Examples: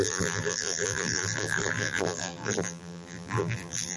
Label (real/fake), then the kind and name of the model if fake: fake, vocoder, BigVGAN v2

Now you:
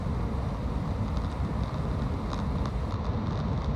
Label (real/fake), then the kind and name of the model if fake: real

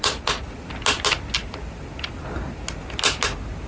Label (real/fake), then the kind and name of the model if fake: real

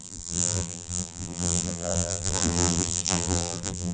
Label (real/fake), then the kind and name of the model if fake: fake, vocoder, BigVGAN v2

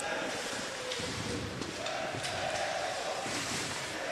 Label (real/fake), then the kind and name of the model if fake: fake, vocoder, BigVGAN v2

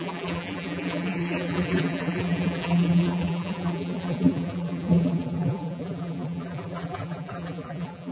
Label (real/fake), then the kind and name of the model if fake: fake, vocoder, BigVGAN v2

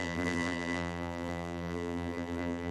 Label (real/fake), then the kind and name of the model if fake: fake, vocoder, BigVGAN v2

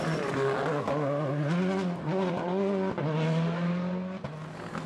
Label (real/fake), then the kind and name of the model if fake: real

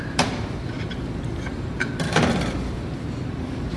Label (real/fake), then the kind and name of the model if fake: fake, vocoder, BigVGAN v2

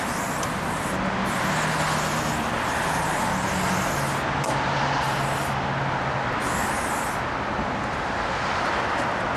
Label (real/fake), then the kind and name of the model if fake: real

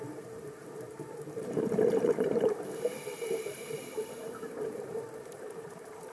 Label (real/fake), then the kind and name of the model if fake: fake, vocoder, BigVGAN v2